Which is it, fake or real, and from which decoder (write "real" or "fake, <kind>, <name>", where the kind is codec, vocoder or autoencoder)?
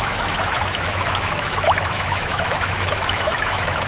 fake, autoencoder, DAC-VAE